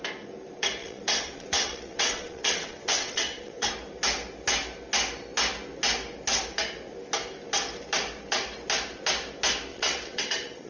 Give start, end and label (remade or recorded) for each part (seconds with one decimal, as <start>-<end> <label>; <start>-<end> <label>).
0.0-0.8 recorded; 0.8-3.7 remade; 3.7-9.7 recorded; 9.7-10.7 remade